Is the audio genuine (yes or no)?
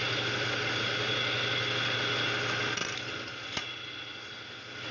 yes